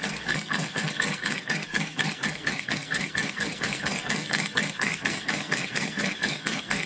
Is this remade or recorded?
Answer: remade